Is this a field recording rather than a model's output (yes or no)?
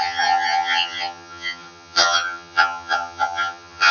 no